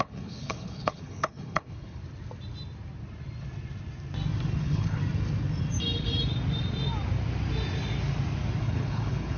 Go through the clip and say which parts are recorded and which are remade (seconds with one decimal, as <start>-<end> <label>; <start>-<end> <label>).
0.0-2.0 remade; 2.0-4.6 recorded; 4.6-5.0 remade; 5.0-8.6 recorded; 8.6-9.4 remade